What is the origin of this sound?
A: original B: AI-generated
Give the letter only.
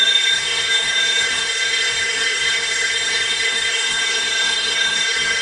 B